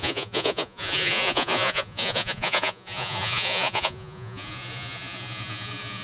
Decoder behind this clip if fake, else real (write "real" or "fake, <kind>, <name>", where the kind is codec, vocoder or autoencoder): fake, vocoder, Vocos